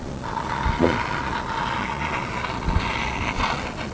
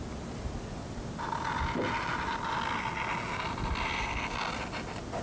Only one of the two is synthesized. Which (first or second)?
first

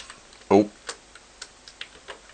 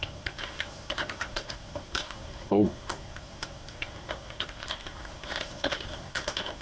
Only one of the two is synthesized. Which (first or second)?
second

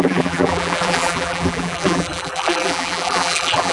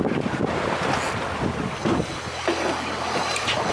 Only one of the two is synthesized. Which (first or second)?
first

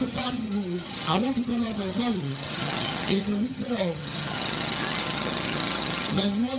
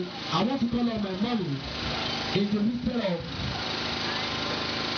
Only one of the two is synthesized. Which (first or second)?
first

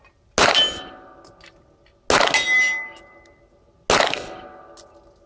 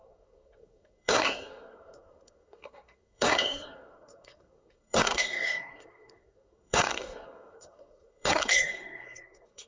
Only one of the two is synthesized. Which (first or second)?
second